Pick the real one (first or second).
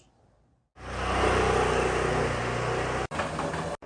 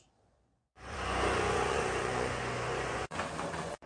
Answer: first